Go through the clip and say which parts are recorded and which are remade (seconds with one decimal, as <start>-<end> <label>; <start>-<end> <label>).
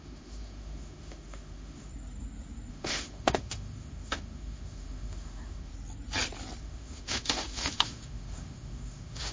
0.0-1.9 remade; 1.9-2.7 recorded; 2.7-5.7 remade; 5.7-6.6 recorded; 6.6-9.3 remade